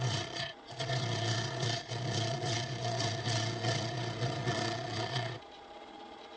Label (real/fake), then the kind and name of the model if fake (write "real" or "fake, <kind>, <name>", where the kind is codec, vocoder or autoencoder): fake, vocoder, Vocos